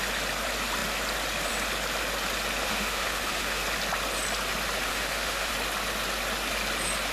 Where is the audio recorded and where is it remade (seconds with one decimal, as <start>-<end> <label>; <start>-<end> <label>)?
0.0-2.6 recorded; 2.6-3.6 remade; 3.6-4.9 recorded; 4.9-5.5 remade; 5.5-7.1 recorded